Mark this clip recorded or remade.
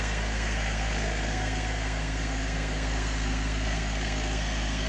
remade